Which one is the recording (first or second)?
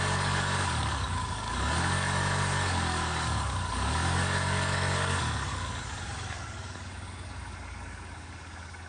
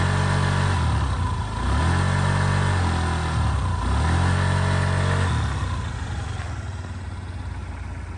second